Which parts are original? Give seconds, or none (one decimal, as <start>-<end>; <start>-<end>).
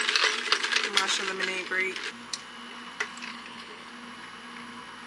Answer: 0.0-3.3; 3.9-5.1